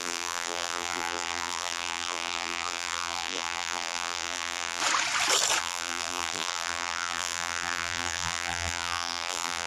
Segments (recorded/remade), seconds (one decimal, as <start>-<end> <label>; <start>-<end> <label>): 0.0-4.8 remade; 4.8-5.6 recorded; 5.6-9.7 remade